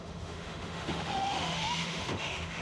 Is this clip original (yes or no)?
no